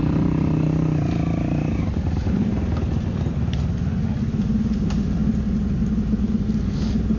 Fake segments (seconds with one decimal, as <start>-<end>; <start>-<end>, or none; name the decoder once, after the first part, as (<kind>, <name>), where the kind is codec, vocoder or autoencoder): none